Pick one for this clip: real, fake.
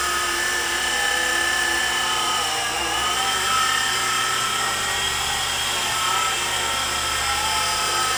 real